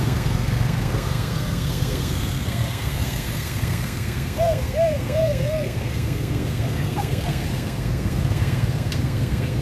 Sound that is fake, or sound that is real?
fake